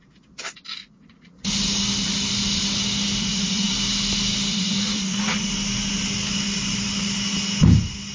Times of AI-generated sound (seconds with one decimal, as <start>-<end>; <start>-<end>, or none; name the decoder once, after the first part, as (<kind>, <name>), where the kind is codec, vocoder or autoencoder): 0.8-1.5 (vocoder, Vocos); 3.2-3.7; 4.5-5.5